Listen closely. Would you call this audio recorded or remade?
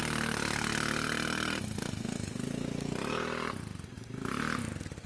recorded